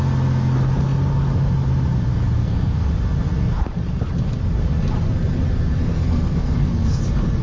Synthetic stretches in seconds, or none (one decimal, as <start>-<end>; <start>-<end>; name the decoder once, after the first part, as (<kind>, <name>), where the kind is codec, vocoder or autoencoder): 2.4-2.9 (codec, SNAC); 5.9-7.0